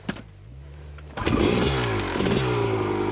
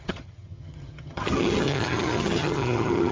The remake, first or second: second